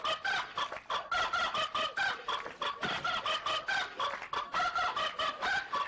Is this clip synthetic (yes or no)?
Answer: no